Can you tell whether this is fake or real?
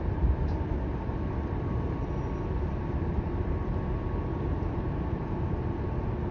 real